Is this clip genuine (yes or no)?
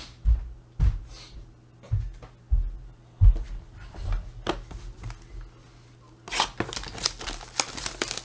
yes